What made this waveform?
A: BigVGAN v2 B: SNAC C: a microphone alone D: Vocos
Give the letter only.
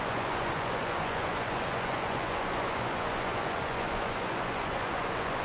D